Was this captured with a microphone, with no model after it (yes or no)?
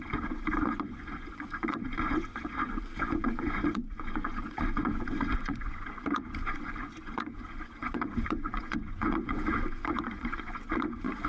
no